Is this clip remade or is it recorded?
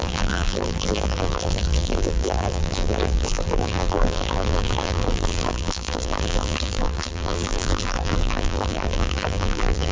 remade